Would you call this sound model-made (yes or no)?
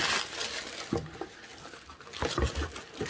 no